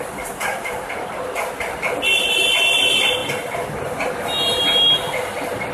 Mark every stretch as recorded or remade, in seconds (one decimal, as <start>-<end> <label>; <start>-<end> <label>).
0.0-0.5 recorded; 0.5-1.4 remade; 1.4-3.2 recorded; 3.2-4.1 remade; 4.1-5.7 recorded